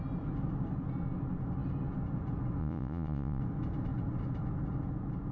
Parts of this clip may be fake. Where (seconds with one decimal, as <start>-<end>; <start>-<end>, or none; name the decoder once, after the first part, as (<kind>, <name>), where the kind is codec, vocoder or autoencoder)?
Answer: 2.6-3.4 (vocoder, Vocos)